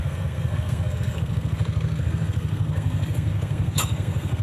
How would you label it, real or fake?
fake